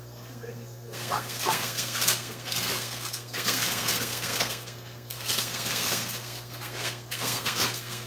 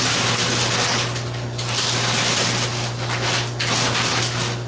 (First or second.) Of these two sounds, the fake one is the first